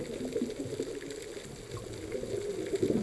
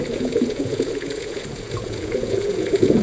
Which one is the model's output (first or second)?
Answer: second